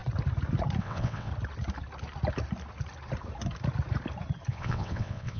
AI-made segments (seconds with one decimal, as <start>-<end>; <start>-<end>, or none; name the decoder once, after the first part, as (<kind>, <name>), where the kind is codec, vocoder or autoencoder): 0.8-1.3 (vocoder, WaveNeXt); 4.5-5.4